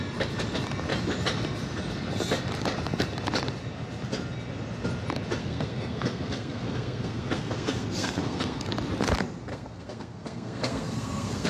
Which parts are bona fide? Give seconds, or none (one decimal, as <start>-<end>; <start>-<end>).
0.0-5.4; 8.7-9.5